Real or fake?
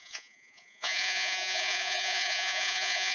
fake